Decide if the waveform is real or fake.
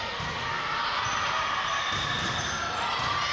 real